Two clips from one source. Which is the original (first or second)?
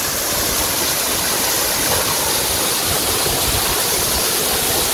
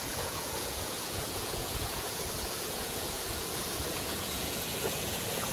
first